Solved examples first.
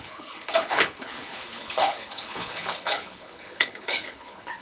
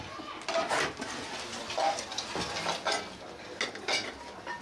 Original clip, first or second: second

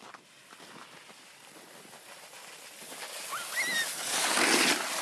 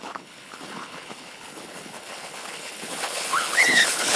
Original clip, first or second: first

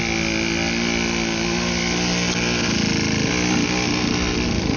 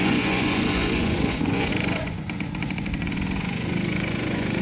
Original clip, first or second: first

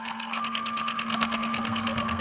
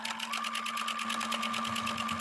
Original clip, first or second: second